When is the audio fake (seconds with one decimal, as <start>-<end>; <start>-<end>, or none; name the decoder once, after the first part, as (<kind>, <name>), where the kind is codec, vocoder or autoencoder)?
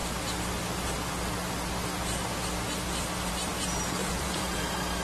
4.0-4.6 (vocoder, Vocos)